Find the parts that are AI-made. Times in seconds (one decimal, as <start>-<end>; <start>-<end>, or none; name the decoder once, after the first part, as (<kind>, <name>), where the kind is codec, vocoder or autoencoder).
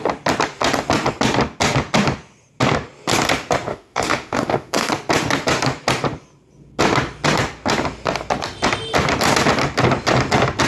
3.7-4.9 (autoencoder, DAC-VAE)